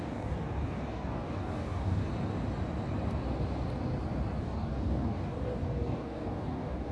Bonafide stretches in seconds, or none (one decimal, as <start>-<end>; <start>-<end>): 2.0-4.4